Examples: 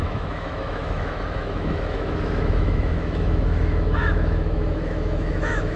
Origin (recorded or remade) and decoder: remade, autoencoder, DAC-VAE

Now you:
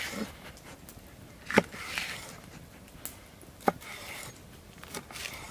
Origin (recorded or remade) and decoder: recorded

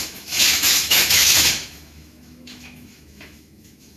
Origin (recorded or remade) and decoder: remade, autoencoder, DAC-VAE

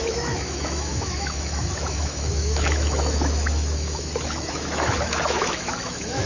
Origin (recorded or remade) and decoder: remade, autoencoder, DAC-VAE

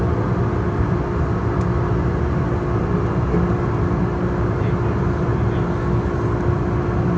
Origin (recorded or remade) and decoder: recorded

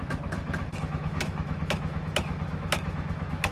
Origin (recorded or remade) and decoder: remade, autoencoder, DAC-VAE